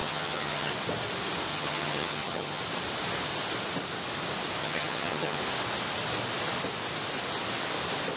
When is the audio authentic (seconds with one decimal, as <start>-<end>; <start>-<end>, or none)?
0.7-1.5; 2.6-4.6; 5.4-8.2